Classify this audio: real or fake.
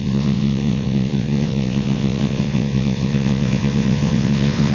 fake